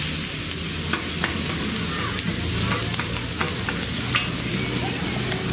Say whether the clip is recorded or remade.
recorded